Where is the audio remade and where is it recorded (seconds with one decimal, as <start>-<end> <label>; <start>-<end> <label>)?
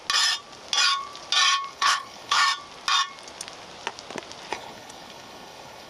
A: 0.0-1.7 recorded; 1.7-2.4 remade; 2.4-4.5 recorded; 4.5-5.9 remade